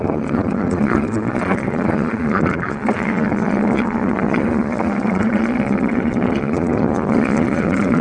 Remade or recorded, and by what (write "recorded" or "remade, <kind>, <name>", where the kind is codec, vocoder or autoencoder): remade, vocoder, Vocos